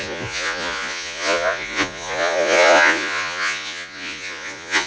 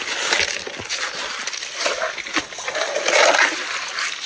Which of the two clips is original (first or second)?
second